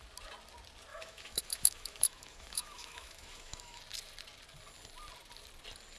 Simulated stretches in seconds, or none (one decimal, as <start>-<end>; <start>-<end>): 0.9-3.8